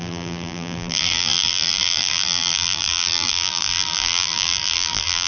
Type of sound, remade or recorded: remade